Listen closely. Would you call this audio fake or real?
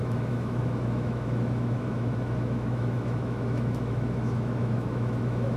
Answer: fake